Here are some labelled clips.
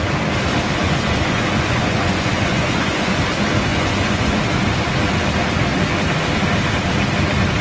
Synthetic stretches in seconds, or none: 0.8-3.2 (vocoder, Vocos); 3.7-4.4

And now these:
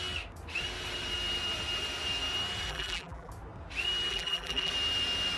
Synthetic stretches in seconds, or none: 2.7-3.3 (vocoder, BigVGAN v2); 4.1-4.7

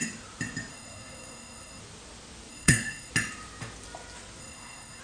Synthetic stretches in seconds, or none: 0.7-1.8 (codec, SNAC); 2.5-3.1; 4.4-5.0

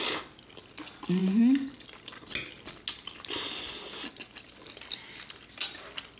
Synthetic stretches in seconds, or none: none

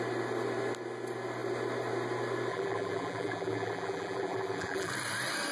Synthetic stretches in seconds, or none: 2.5-4.9 (vocoder, BigVGAN v2)